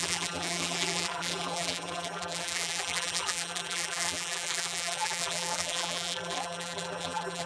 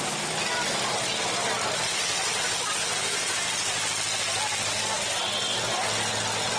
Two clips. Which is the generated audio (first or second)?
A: first